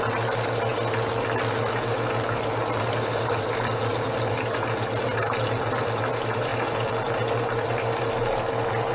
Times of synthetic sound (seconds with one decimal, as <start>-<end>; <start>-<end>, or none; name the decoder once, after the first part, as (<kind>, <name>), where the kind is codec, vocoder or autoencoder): none